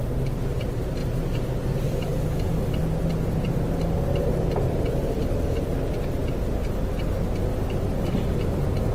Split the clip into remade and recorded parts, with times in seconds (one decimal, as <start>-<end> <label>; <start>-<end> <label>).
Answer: 0.0-2.1 remade; 2.1-4.5 recorded; 4.5-5.7 remade; 5.7-8.5 recorded; 8.5-8.9 remade